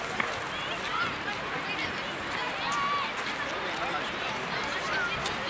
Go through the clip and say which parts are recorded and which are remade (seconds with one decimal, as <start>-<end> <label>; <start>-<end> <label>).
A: 0.0-5.5 recorded